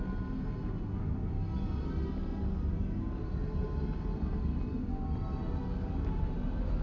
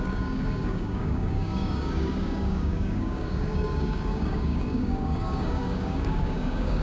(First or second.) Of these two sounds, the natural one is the first